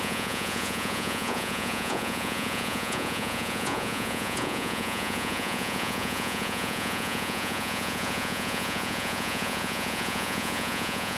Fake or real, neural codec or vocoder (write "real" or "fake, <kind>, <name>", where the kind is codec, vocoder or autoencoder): fake, vocoder, Vocos